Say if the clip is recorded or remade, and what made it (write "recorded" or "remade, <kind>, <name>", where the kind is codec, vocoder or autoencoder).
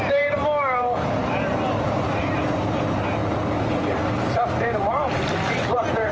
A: remade, vocoder, BigVGAN v2